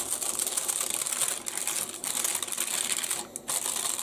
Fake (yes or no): no